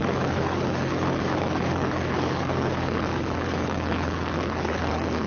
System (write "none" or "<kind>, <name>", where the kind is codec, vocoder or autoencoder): codec, HILCodec